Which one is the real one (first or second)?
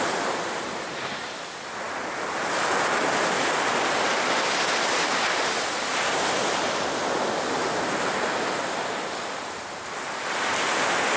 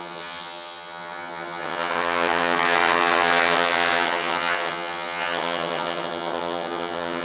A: first